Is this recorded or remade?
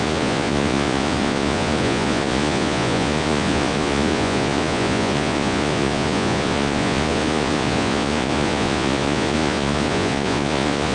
remade